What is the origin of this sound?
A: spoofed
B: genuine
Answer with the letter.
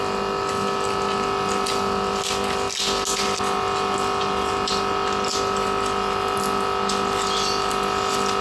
B